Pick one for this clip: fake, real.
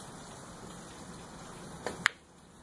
real